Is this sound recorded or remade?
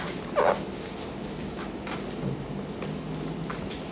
recorded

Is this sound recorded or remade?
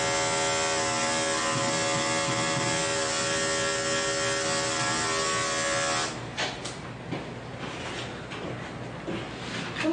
recorded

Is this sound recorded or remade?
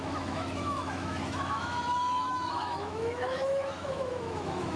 remade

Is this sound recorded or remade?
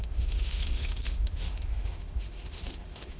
remade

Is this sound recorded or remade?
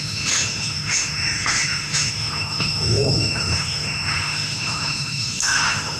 remade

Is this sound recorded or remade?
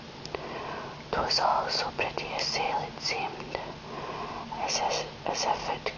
recorded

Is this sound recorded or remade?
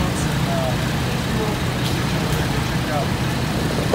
recorded